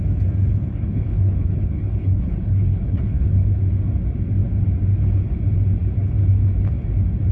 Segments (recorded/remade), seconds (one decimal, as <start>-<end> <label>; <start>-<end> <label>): 0.0-0.7 recorded; 0.7-3.6 remade; 3.6-7.3 recorded